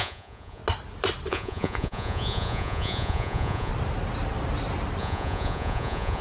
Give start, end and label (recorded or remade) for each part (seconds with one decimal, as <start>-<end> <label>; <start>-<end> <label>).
0.0-0.6 remade; 0.6-1.3 recorded; 1.3-3.7 remade; 3.7-5.0 recorded; 5.0-6.2 remade